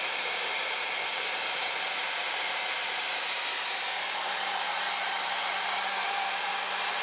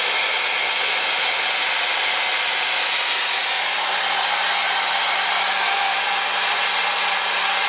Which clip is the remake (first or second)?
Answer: first